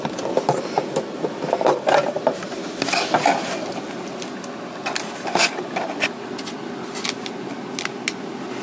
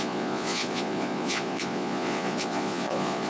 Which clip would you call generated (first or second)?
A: second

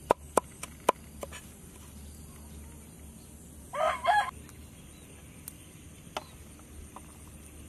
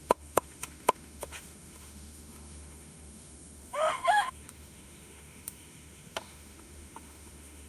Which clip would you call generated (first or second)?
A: second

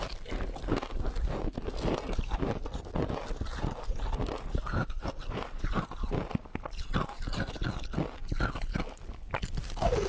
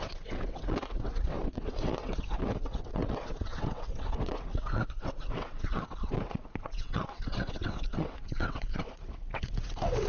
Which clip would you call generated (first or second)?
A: second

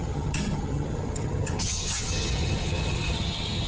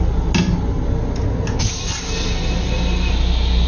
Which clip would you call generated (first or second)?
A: first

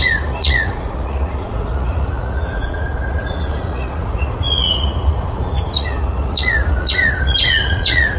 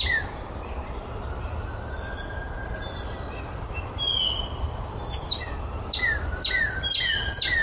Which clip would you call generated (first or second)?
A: first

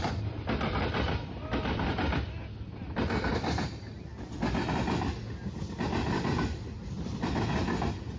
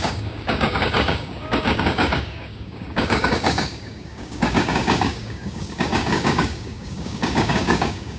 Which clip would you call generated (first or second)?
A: second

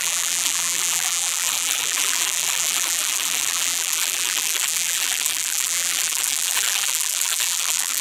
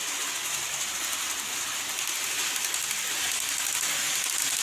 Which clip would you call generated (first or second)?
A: first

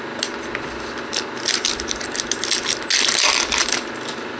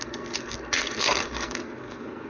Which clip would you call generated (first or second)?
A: second